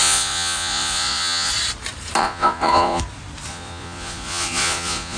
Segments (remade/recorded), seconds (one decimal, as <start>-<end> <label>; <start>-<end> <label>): 0.0-1.5 remade; 1.5-2.2 recorded; 2.2-3.0 remade; 3.0-3.5 recorded; 3.5-5.2 remade